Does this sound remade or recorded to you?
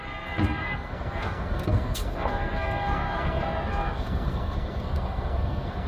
remade